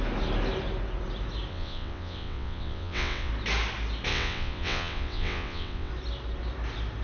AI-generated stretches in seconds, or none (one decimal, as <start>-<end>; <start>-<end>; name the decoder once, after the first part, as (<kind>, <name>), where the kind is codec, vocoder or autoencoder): 1.5-3.3 (vocoder, WaveNeXt); 4.1-5.9